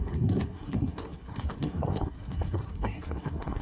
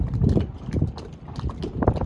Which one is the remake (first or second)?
first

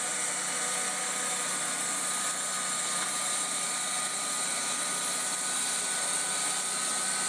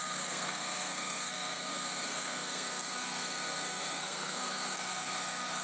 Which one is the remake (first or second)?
second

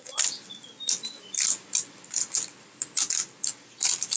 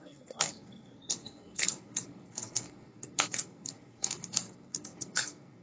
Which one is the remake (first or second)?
second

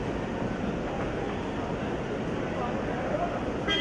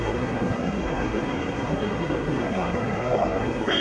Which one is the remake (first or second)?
second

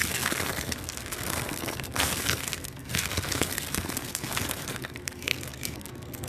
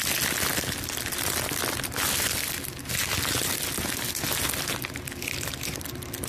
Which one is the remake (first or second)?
first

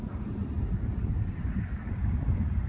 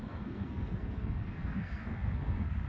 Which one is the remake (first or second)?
second